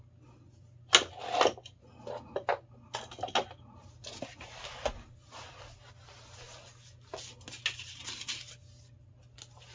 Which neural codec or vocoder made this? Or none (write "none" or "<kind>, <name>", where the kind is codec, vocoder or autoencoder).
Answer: none